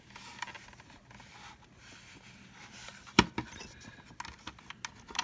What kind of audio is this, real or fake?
real